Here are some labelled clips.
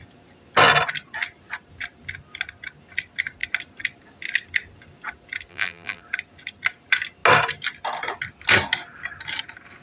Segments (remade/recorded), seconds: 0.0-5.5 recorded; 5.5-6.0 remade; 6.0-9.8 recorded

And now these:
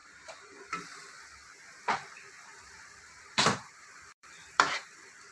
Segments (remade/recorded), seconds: 0.0-0.8 remade; 0.8-2.5 recorded; 2.5-5.3 remade

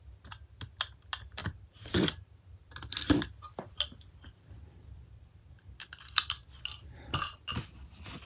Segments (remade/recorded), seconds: 0.0-1.4 recorded; 1.4-5.8 remade; 5.8-8.3 recorded

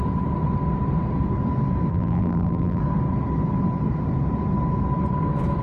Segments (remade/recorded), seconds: 0.0-1.9 recorded; 1.9-2.8 remade; 2.8-5.6 recorded

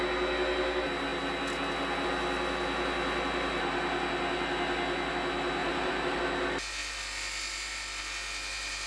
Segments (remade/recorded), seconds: 0.0-5.6 recorded; 5.6-6.2 remade; 6.2-8.9 recorded

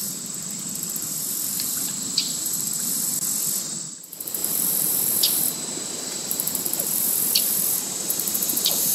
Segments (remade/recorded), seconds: 0.0-3.1 remade; 3.1-4.0 recorded; 4.0-8.9 remade

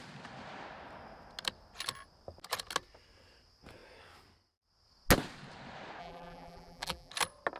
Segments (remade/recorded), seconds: 0.0-6.0 recorded; 6.0-7.1 remade; 7.1-7.6 recorded

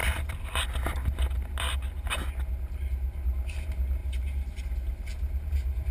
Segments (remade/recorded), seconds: 0.0-4.0 recorded; 4.0-4.6 remade; 4.6-5.9 recorded